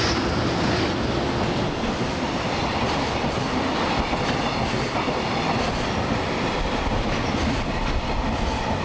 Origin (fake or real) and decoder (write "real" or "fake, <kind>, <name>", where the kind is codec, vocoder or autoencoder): real